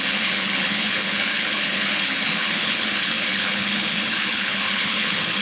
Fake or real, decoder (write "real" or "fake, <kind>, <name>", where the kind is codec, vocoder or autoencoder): fake, codec, HILCodec